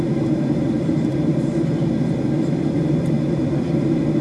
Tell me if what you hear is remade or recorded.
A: remade